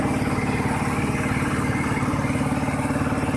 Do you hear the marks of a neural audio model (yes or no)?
no